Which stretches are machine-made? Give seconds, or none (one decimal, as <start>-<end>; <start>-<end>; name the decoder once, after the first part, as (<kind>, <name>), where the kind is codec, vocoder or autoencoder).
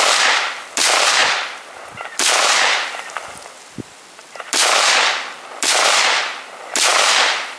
none